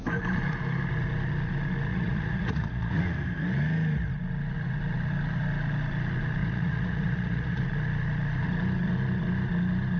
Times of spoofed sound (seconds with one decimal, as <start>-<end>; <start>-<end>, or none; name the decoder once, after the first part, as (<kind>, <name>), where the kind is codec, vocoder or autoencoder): 1.9-3.0 (vocoder, Vocos); 6.4-7.6